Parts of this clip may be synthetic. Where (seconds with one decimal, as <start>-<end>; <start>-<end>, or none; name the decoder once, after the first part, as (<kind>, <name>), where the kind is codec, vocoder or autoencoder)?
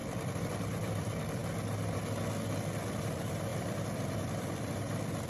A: 0.0-1.4 (vocoder, BigVGAN v2); 2.8-5.3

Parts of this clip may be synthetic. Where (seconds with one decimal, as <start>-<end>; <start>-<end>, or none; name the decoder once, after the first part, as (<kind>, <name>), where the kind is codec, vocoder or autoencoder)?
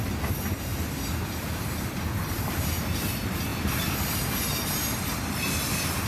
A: 0.7-2.6 (vocoder, BigVGAN v2); 3.5-4.2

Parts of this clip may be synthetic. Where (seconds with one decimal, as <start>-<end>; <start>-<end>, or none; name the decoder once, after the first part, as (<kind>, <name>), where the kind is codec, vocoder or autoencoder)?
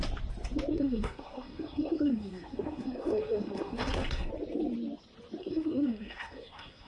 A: 0.7-4.3 (codec, SNAC); 5.4-6.9